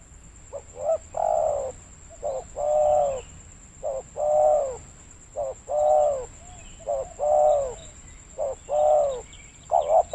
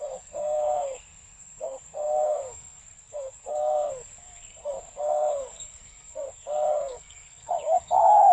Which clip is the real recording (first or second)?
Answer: first